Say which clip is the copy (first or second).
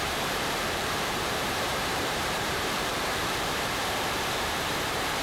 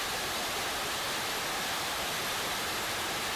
first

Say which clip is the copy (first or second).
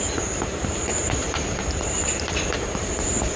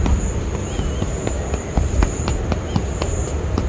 first